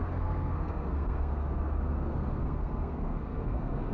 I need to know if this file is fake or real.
fake